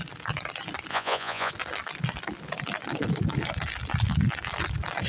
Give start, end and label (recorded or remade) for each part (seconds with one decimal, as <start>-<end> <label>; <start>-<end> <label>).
0.0-0.9 recorded; 0.9-1.5 remade; 1.5-5.1 recorded